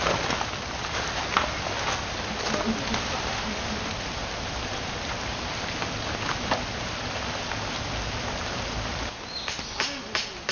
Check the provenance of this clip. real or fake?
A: real